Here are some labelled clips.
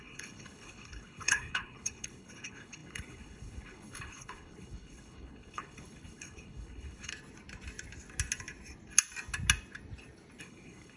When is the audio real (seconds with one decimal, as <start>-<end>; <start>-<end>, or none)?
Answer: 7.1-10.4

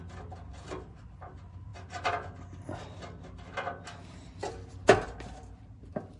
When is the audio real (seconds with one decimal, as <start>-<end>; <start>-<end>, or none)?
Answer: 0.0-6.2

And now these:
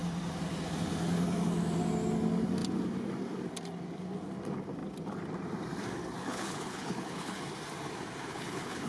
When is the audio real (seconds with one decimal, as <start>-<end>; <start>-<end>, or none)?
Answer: 0.0-6.2; 7.4-8.3

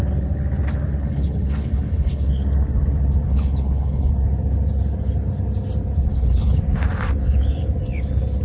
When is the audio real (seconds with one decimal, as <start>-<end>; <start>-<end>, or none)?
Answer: 0.0-1.0; 2.3-3.3; 4.1-6.1; 6.6-8.4

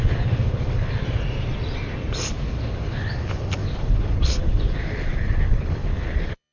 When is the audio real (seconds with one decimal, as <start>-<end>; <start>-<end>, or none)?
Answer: 1.0-2.3

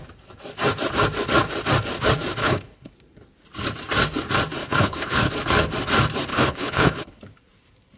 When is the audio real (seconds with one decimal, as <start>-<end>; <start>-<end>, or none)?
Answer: 0.0-2.4; 2.9-4.6; 5.3-6.3; 7.2-8.0

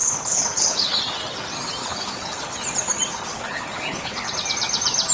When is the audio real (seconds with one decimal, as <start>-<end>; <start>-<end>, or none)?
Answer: 0.9-1.8; 2.4-3.3; 4.3-5.1